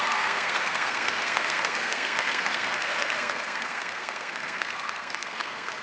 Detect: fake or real fake